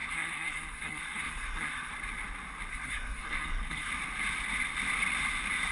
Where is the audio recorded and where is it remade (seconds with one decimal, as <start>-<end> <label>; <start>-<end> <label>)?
0.0-1.9 remade; 1.9-2.7 recorded; 2.7-3.9 remade; 3.9-5.7 recorded